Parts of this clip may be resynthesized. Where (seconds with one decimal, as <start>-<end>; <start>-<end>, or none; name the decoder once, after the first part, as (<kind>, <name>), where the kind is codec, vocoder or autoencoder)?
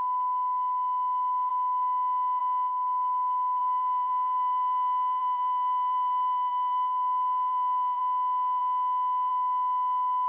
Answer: 3.6-8.0 (vocoder, BigVGAN v2)